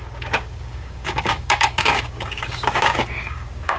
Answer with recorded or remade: remade